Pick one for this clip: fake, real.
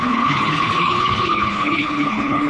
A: fake